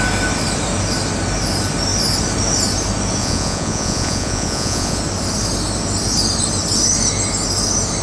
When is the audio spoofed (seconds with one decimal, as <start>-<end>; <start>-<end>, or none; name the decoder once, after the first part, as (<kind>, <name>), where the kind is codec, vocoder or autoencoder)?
3.2-5.0 (vocoder, Vocos)